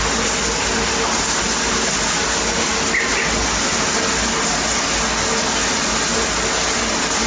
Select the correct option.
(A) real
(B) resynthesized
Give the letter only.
A